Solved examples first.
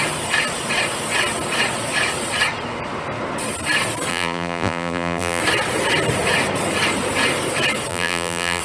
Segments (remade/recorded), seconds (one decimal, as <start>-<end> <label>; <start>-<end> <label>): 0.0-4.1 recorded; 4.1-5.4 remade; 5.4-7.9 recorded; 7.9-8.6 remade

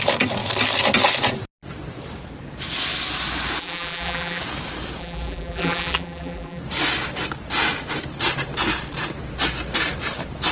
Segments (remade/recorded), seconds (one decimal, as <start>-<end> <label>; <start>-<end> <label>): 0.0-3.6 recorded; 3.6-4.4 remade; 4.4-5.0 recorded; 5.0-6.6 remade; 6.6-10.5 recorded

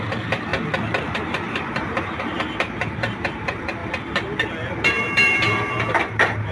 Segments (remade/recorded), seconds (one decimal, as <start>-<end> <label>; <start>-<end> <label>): 0.0-0.5 remade; 0.5-1.3 recorded; 1.3-3.8 remade; 3.8-4.9 recorded; 4.9-6.5 remade